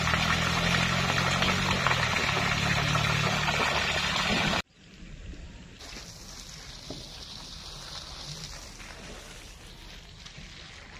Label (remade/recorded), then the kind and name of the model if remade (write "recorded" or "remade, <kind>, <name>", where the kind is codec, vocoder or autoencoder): recorded